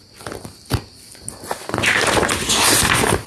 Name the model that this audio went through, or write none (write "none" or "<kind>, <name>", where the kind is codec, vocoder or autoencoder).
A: none